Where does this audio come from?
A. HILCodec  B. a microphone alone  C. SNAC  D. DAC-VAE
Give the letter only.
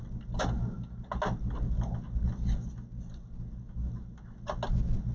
B